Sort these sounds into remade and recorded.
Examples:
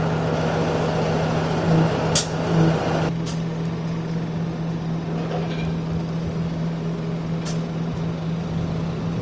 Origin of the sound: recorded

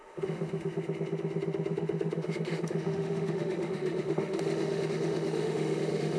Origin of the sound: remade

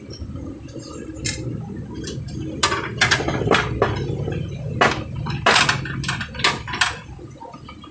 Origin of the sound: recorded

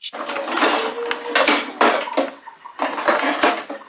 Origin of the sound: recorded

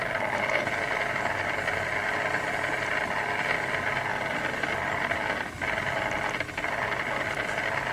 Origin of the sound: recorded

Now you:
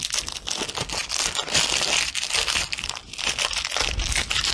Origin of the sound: recorded